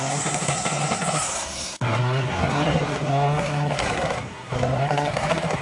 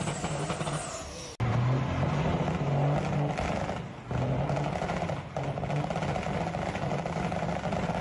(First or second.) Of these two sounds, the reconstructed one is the first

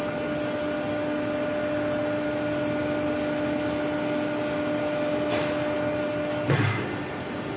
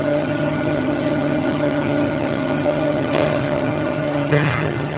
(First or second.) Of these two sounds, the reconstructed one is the second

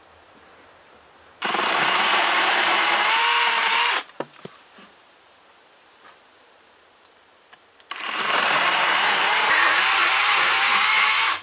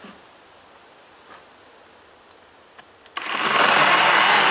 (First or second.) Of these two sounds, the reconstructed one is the first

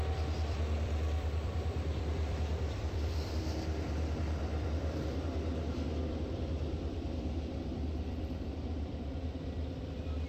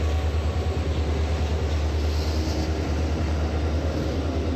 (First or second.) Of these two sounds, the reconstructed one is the first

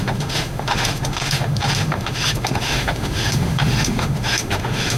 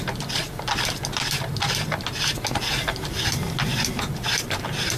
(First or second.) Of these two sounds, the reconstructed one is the first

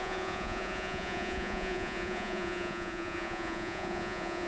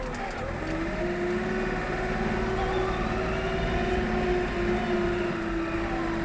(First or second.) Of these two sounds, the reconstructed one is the first